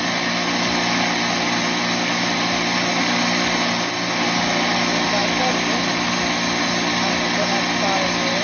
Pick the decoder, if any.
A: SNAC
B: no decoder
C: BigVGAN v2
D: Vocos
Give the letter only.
B